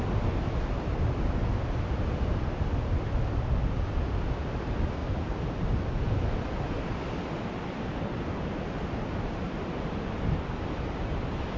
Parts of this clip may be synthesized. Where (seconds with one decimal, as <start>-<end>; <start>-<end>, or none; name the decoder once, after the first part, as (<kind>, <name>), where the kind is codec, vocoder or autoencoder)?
none